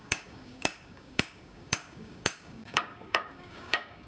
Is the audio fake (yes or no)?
yes